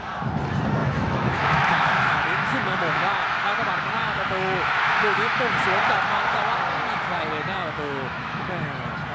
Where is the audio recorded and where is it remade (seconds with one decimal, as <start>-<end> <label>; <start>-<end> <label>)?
0.0-0.8 recorded; 0.8-3.1 remade; 3.1-4.0 recorded; 4.0-5.4 remade; 5.4-7.6 recorded; 7.6-8.6 remade; 8.6-9.1 recorded